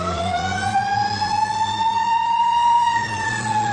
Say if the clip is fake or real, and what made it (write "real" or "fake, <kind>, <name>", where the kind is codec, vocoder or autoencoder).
fake, vocoder, Vocos